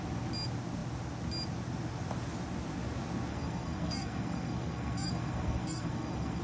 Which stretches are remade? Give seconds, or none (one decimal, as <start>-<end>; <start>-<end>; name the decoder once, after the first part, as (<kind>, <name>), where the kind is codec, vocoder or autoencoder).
3.3-6.4 (codec, SNAC)